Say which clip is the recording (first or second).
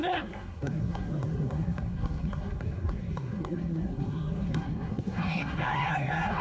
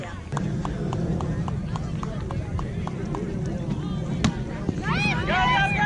second